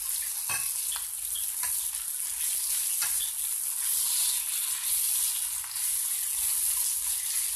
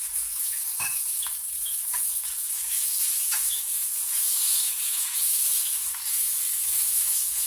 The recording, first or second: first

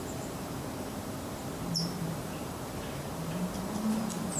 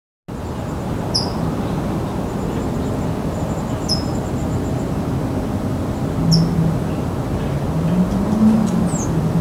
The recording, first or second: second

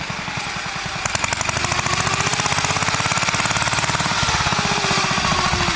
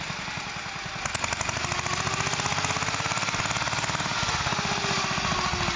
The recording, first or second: second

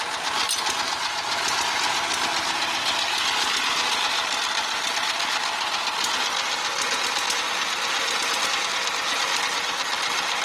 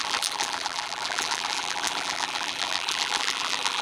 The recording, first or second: first